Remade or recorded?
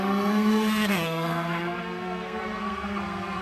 remade